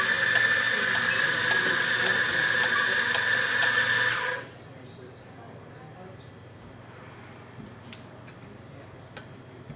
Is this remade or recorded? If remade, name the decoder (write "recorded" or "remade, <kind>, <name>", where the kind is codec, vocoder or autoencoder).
recorded